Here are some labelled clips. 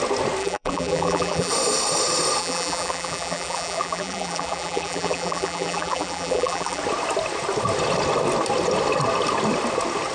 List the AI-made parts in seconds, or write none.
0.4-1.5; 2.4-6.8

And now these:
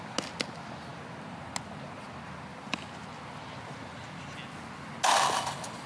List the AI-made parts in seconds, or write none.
2.5-4.2

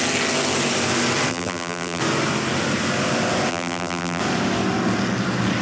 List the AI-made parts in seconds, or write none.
1.3-2.0; 3.5-4.2